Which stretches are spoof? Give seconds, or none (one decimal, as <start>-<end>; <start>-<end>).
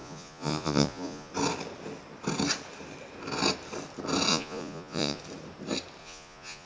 0.0-1.3; 4.3-5.2; 6.0-6.7